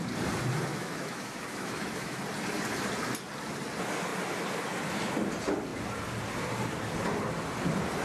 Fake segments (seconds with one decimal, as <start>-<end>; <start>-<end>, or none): 0.7-2.2